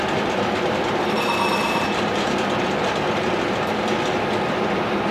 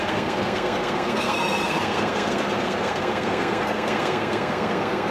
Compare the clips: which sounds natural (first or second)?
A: first